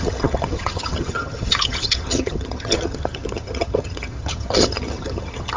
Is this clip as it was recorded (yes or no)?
no